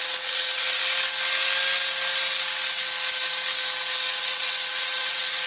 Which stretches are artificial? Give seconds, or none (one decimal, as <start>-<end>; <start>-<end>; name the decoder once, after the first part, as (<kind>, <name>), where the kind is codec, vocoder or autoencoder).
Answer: 0.0-0.8 (vocoder, WaveNeXt); 4.1-5.5